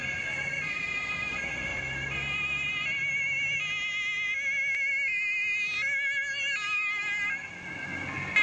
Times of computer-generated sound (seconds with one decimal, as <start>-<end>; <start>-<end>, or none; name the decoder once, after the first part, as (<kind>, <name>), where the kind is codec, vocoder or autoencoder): none